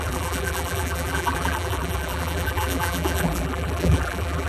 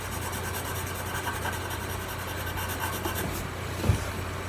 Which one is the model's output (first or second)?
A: first